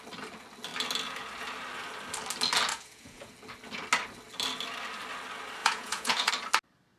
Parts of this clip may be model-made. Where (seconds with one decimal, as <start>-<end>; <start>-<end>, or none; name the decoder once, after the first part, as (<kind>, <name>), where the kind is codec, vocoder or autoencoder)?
2.7-3.3 (vocoder, Vocos); 5.6-6.3